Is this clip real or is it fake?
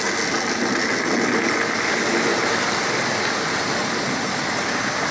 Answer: real